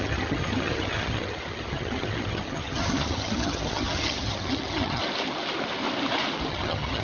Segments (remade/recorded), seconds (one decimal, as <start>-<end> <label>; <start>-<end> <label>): 0.0-5.0 remade; 5.0-6.5 recorded; 6.5-7.0 remade

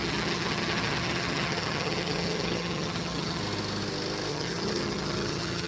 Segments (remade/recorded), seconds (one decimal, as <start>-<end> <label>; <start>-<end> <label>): 0.0-3.4 remade; 3.4-4.3 recorded; 4.3-5.7 remade

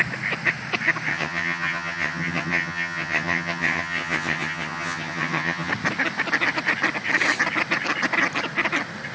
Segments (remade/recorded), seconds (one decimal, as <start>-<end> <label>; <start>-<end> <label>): 0.0-1.1 recorded; 1.1-5.7 remade; 5.7-9.1 recorded

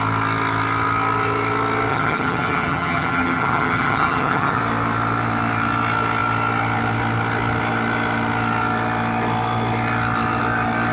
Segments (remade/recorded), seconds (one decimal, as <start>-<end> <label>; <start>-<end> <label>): 0.0-1.9 recorded; 1.9-4.6 remade; 4.6-10.9 recorded

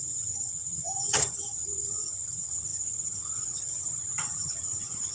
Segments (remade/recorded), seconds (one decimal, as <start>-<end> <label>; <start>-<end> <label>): 0.0-5.1 remade